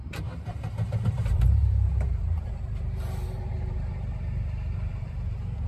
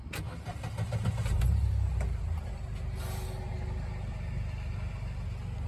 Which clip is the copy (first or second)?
first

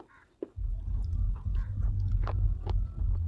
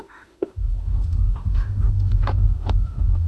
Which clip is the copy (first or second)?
second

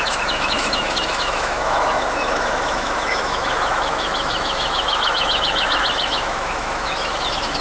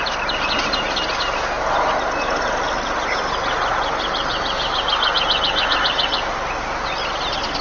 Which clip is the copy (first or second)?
first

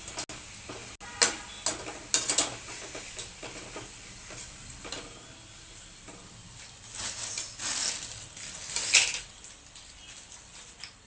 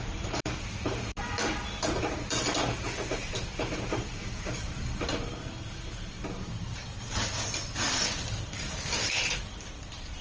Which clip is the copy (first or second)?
second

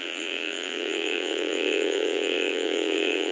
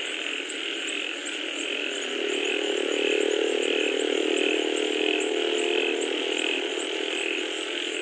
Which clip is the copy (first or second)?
first